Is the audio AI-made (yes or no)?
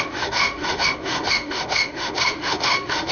yes